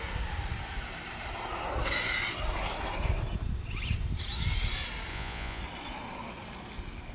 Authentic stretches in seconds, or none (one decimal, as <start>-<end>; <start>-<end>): 0.0-5.1; 5.6-7.1